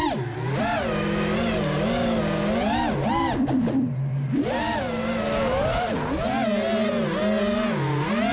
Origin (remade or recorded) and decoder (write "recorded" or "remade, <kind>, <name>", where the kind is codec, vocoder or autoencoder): recorded